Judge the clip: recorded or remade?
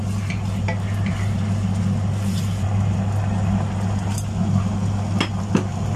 recorded